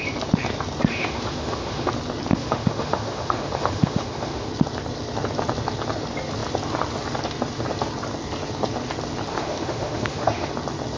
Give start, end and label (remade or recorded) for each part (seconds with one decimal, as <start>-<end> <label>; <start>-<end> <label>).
0.0-0.9 recorded; 0.9-1.9 remade; 1.9-2.3 recorded; 2.3-4.5 remade; 4.5-9.3 recorded; 9.3-10.5 remade; 10.5-11.0 recorded